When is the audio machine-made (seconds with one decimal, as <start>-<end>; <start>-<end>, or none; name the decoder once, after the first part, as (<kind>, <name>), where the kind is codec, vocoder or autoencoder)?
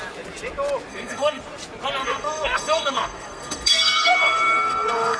0.9-1.4 (codec, SNAC); 2.0-5.2